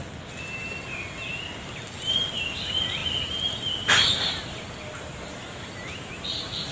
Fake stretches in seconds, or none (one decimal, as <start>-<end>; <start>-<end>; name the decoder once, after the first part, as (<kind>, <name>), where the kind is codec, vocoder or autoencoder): none